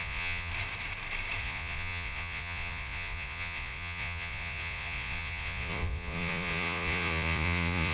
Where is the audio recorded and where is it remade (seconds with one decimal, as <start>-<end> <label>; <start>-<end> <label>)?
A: 0.0-0.5 remade; 0.5-1.4 recorded; 1.4-7.9 remade